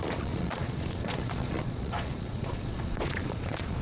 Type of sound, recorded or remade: remade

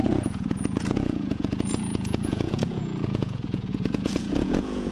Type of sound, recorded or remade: remade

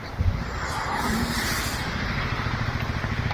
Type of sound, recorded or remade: remade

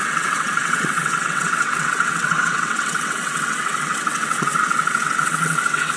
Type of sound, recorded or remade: remade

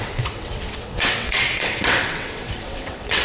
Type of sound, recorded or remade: remade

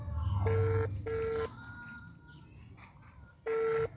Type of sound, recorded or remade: recorded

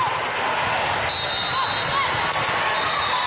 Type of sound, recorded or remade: recorded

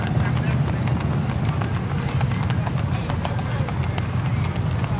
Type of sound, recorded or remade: recorded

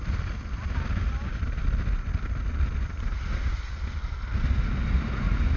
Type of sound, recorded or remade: recorded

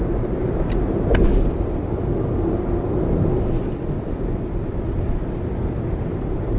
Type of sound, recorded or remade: remade